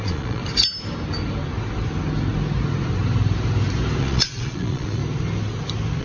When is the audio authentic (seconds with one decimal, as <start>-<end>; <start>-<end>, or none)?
0.4-4.0; 5.0-6.0